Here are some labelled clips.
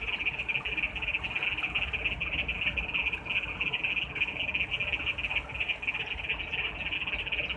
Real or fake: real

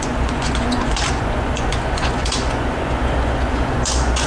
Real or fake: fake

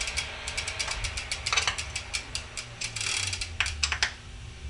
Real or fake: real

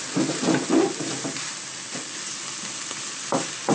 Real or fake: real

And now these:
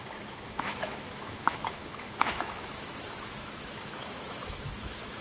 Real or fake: fake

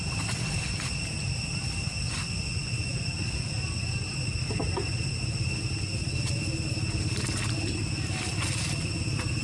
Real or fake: real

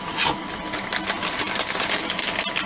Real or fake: real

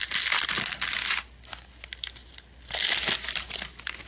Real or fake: real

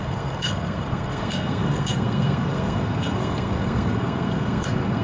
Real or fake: fake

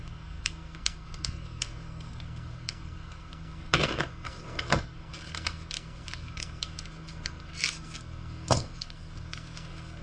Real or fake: fake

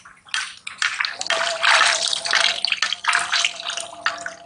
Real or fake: real